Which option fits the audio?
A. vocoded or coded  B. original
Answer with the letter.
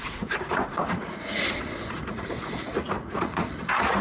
A